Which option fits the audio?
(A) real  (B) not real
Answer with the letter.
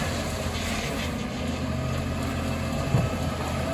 A